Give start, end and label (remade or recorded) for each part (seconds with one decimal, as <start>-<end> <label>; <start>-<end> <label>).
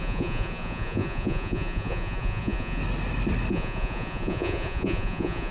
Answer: 0.0-2.8 remade; 2.8-3.5 recorded; 3.5-5.5 remade